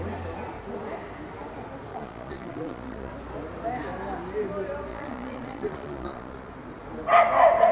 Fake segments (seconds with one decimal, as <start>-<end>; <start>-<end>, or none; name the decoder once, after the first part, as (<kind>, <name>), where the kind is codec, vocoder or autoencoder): 1.9-3.1 (vocoder, Vocos); 4.9-6.5